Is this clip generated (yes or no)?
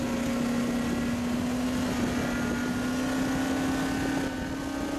no